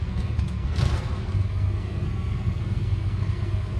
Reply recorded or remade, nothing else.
remade